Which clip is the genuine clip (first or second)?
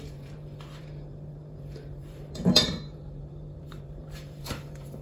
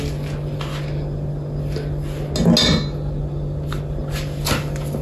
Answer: second